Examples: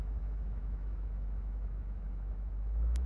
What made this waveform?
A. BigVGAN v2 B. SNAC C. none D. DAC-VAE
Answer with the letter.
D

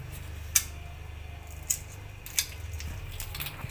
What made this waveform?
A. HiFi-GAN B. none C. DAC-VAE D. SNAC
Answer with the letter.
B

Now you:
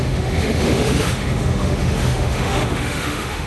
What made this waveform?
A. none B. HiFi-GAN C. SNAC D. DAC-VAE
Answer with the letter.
D